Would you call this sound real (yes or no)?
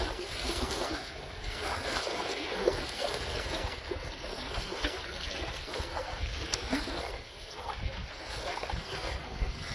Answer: no